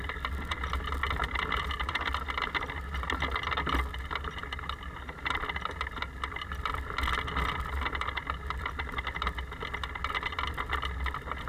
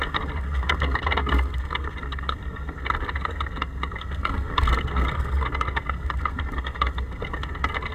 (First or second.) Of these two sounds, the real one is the first